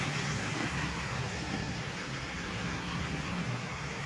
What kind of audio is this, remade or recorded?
remade